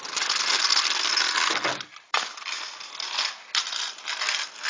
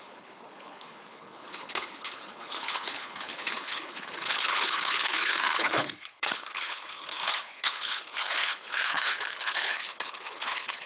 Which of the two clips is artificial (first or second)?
second